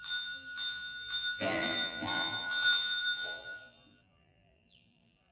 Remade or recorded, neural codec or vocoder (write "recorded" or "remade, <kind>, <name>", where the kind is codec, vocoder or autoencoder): remade, vocoder, BigVGAN v2